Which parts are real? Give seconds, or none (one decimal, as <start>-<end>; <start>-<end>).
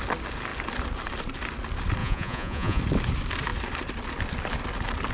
0.0-2.0; 2.8-5.1